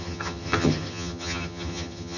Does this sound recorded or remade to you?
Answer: remade